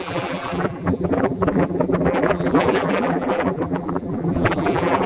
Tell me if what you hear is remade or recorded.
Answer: remade